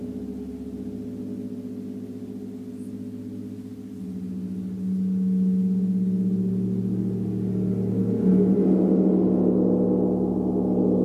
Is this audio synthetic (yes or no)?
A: no